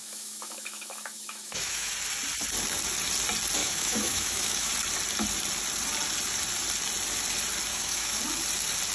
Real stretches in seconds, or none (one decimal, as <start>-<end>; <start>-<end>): 1.9-3.6; 4.7-7.7; 8.2-8.9